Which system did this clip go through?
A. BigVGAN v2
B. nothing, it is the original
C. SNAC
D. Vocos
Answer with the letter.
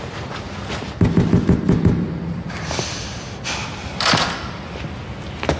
B